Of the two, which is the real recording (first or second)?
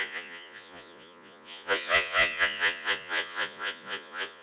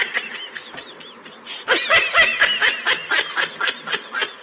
second